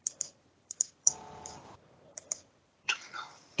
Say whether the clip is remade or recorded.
remade